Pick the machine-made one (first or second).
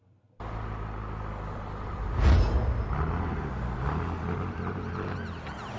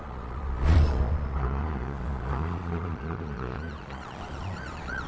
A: second